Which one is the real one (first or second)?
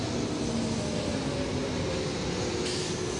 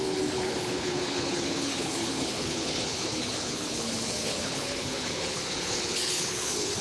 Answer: first